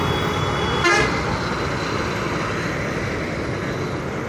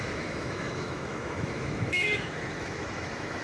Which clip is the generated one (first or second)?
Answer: second